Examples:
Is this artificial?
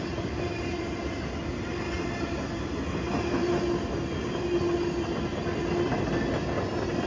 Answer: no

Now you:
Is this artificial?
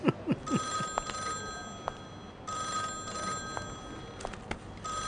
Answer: no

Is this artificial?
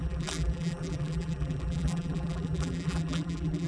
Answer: yes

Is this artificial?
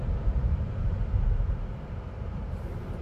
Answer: yes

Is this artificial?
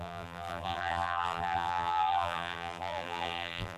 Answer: yes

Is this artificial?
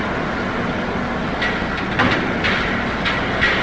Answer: no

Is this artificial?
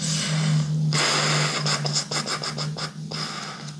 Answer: no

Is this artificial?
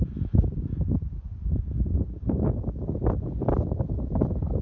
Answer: no